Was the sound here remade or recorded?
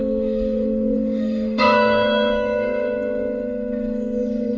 remade